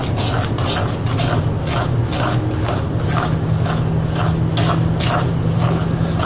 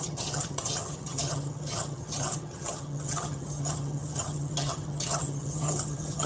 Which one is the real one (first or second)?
first